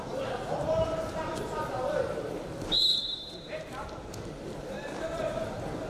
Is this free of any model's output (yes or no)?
no